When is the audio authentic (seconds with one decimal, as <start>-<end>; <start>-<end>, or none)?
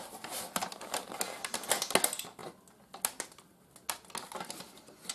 0.0-5.1